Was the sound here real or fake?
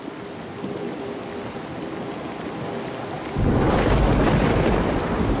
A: real